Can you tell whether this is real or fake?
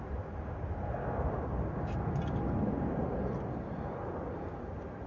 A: real